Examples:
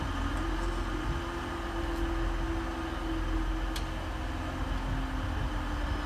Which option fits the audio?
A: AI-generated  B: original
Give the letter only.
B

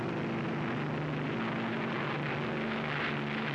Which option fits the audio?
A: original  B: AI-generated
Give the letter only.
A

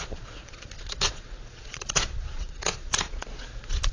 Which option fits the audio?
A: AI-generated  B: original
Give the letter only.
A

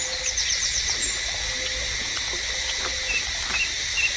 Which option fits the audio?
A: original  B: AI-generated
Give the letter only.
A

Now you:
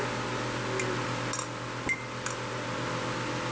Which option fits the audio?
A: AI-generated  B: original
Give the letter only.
B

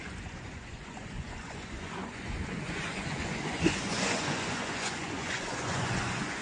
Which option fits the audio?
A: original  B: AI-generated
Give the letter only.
B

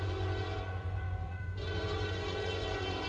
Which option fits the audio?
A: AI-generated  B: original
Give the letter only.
A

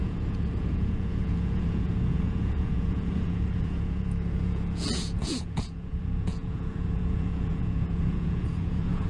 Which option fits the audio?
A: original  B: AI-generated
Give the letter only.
B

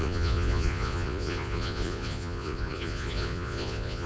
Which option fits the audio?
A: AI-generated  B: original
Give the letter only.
A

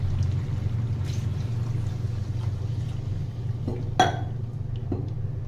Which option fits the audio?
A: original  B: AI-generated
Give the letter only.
A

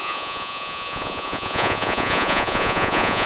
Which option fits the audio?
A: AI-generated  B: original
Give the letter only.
A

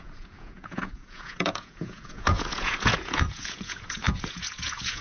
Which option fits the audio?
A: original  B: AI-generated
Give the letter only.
B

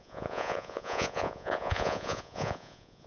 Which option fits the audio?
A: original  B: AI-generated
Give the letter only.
B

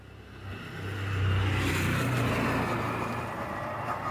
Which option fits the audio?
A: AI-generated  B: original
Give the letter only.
B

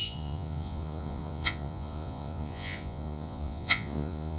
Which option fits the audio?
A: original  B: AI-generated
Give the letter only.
B